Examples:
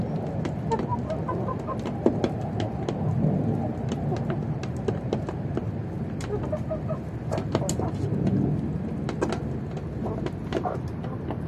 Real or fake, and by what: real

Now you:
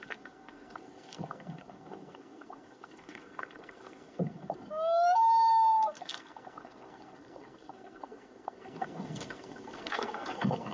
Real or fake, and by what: fake, codec, SNAC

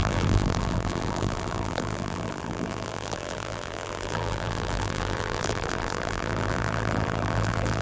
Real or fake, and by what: fake, vocoder, BigVGAN v2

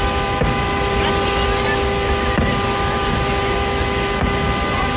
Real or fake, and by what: real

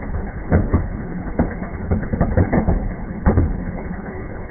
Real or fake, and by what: fake, codec, HILCodec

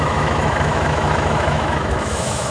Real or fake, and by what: fake, autoencoder, DAC-VAE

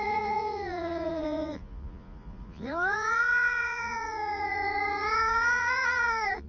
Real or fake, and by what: fake, vocoder, Vocos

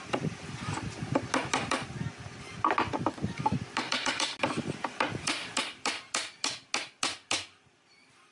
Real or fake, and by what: real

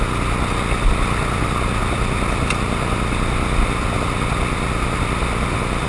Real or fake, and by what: real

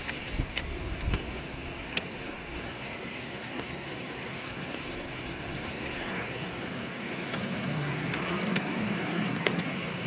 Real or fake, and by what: fake, codec, SNAC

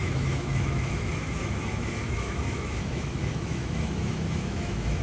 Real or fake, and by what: fake, autoencoder, DAC-VAE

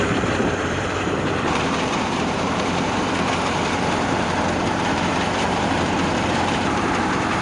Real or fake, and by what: fake, vocoder, BigVGAN v2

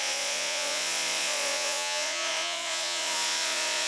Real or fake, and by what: fake, vocoder, Vocos